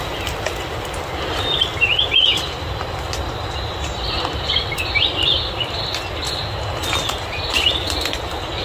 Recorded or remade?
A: recorded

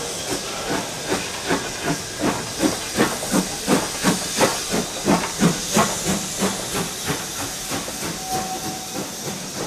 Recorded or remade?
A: recorded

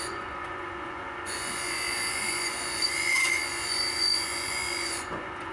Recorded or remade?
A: remade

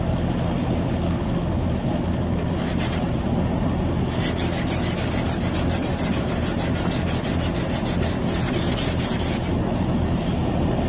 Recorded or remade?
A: recorded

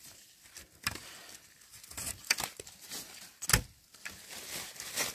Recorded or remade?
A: recorded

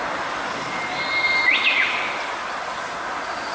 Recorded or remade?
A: recorded